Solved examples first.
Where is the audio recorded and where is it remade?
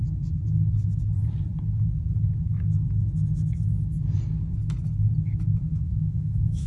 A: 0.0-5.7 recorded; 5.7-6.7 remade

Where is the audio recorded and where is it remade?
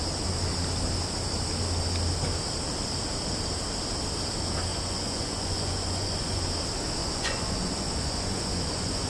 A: 0.0-4.7 recorded; 4.7-6.4 remade; 6.4-7.0 recorded; 7.0-9.1 remade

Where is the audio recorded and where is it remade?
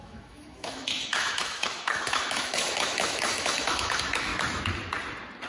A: 0.0-4.3 remade; 4.3-5.5 recorded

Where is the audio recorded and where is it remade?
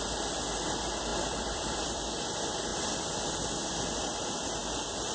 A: 0.0-1.1 recorded; 1.1-2.1 remade; 2.1-2.7 recorded; 2.7-3.3 remade; 3.3-4.6 recorded; 4.6-5.1 remade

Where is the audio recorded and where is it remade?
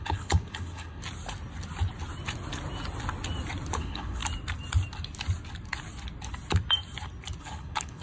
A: 0.0-1.0 remade; 1.0-3.8 recorded; 3.8-4.2 remade; 4.2-7.4 recorded; 7.4-8.0 remade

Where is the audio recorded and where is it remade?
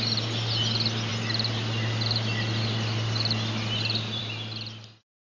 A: 0.0-5.2 recorded